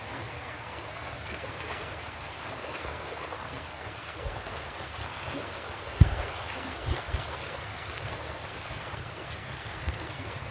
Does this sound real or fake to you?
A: fake